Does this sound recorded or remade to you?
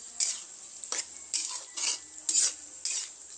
recorded